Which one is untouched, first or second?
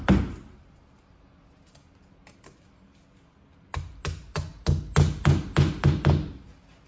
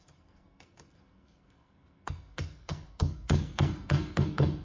first